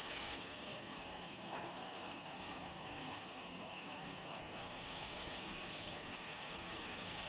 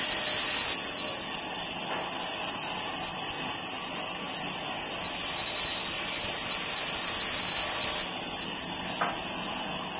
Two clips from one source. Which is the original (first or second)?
second